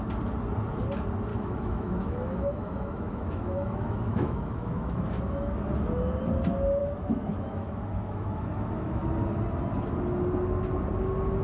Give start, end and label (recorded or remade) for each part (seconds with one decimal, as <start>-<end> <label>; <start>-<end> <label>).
0.0-1.3 recorded; 1.3-5.2 remade; 5.2-6.8 recorded; 6.8-9.0 remade; 9.0-11.4 recorded